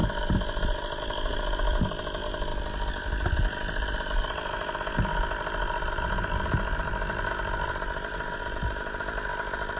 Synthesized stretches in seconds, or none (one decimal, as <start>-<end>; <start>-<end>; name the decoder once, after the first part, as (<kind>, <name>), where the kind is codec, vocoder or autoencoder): none